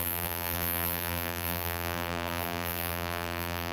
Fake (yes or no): yes